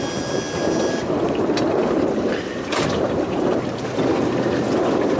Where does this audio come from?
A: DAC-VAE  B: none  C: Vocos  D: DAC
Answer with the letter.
B